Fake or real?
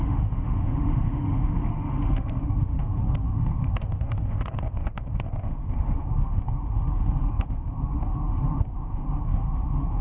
fake